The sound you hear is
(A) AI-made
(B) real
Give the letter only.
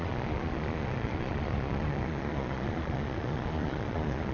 A